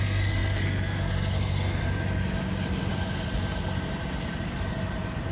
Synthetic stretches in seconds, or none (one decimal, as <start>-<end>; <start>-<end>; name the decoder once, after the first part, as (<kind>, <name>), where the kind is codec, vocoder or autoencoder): 0.0-1.8 (codec, SNAC)